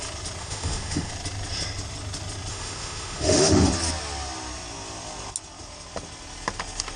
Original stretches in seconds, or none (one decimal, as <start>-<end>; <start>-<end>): 0.0-0.4; 1.1-2.5; 3.7-7.0